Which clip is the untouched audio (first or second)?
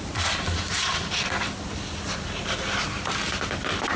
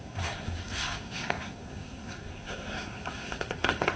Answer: first